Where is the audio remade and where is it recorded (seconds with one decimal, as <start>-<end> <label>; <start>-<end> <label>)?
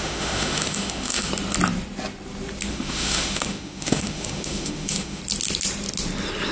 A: 0.0-1.3 remade; 1.3-2.7 recorded; 2.7-5.2 remade; 5.2-6.5 recorded